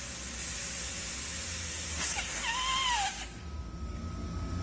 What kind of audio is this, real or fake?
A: real